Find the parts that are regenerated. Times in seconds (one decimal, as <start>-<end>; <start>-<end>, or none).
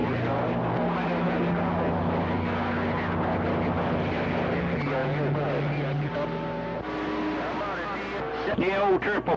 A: none